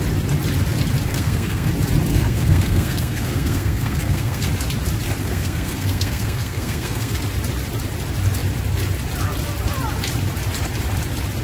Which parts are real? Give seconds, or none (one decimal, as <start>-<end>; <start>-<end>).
0.0-1.1; 1.7-2.1; 4.5-5.2; 7.2-11.4